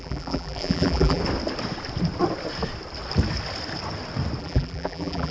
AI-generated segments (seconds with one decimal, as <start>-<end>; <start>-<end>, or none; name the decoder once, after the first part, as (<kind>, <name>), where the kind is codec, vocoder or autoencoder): 0.0-1.2 (vocoder, BigVGAN v2); 4.4-5.3